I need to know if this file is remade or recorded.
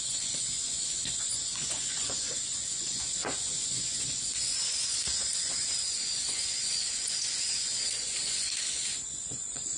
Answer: remade